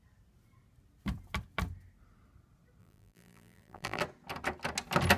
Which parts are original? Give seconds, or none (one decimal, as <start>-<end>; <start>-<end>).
0.0-2.8; 4.0-5.2